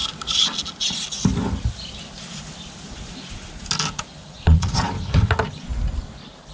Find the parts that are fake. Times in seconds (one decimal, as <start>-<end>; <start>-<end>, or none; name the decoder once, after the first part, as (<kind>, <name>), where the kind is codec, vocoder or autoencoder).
4.2-4.8 (vocoder, Vocos)

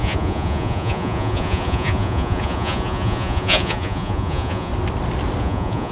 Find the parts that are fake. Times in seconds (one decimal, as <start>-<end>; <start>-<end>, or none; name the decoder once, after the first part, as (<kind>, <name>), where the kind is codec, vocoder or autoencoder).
0.0-4.7 (vocoder, Vocos); 5.4-5.9

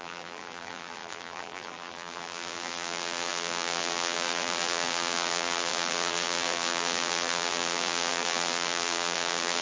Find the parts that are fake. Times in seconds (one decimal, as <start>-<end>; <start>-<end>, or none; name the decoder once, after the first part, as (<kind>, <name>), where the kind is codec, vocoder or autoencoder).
0.0-9.6 (vocoder, BigVGAN v2)

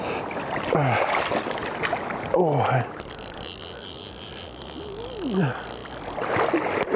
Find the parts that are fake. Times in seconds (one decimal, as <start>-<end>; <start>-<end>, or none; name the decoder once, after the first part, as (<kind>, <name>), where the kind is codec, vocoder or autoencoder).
none